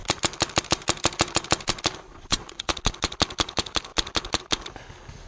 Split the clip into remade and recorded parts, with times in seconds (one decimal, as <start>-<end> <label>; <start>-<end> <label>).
0.0-2.1 recorded; 2.1-2.7 remade; 2.7-5.3 recorded